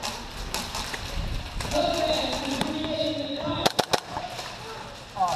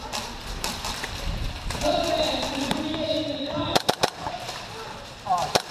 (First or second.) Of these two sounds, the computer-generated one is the second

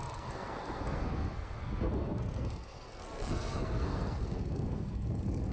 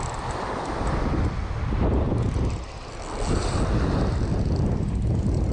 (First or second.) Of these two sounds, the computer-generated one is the first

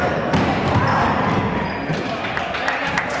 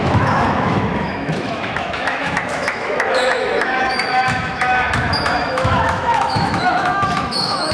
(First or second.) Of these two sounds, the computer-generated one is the second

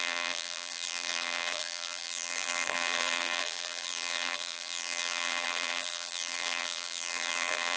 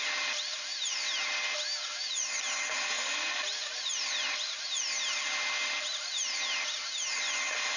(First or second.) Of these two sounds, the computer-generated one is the first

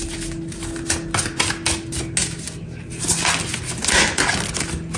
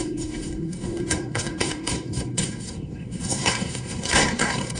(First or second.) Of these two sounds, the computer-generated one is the second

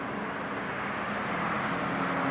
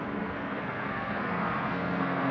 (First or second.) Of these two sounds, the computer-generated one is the second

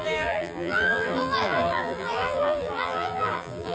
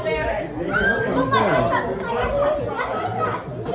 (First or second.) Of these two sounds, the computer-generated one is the first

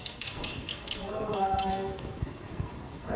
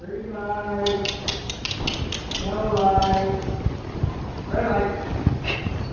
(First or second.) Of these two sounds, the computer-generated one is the first